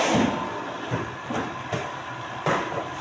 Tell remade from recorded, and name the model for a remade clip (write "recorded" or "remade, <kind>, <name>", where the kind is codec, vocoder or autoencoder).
recorded